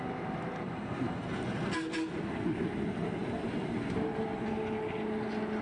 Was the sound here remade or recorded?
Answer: recorded